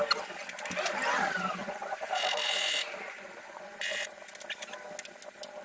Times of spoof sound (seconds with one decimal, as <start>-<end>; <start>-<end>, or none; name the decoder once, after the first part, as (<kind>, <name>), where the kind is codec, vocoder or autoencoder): 1.6-4.2 (vocoder, Vocos)